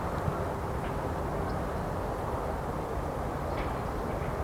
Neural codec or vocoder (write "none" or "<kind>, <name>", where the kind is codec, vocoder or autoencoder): none